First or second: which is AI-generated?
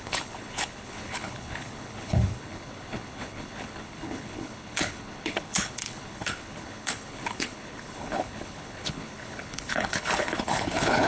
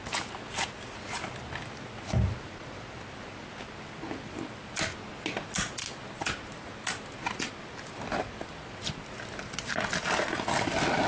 first